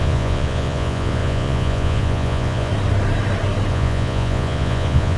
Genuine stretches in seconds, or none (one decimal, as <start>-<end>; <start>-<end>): 2.7-3.7